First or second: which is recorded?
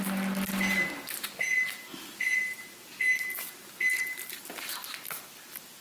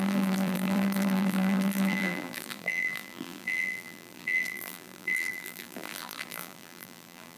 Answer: first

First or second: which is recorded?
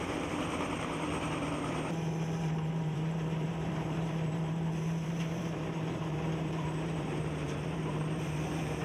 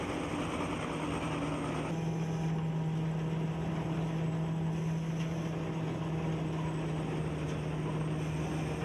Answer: second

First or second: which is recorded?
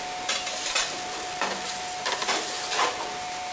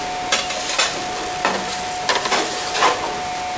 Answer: second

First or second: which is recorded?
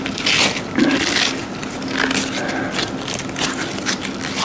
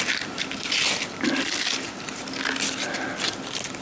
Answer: first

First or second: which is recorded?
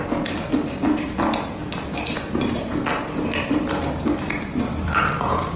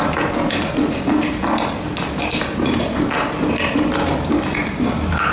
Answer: first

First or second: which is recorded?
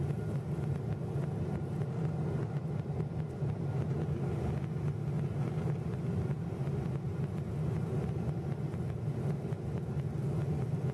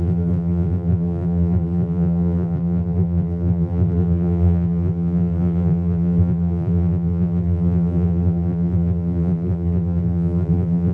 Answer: first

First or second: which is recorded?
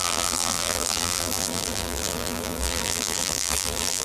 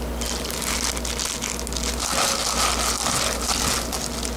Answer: second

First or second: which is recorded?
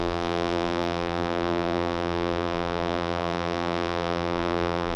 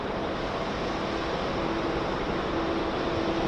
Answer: second